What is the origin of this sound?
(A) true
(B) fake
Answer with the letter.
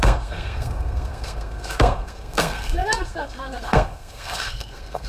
B